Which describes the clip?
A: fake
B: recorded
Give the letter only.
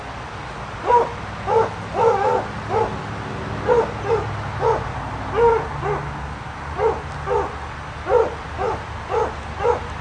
B